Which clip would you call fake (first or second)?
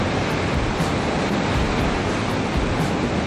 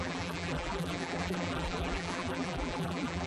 second